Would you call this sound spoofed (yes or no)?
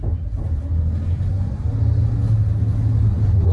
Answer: no